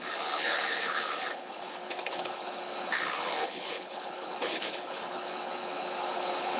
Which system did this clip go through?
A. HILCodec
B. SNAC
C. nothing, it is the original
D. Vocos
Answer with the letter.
A